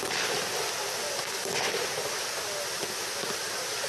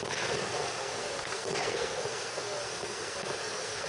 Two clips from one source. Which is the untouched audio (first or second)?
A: first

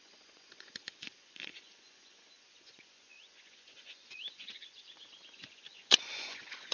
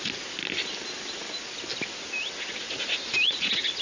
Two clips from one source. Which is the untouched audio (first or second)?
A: second